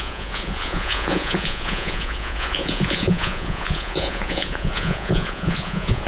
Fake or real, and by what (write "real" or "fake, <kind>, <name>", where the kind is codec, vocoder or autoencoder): fake, vocoder, Vocos